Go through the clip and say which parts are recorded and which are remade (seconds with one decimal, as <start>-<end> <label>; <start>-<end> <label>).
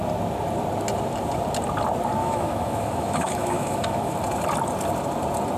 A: 0.0-2.2 recorded; 2.2-4.1 remade; 4.1-5.6 recorded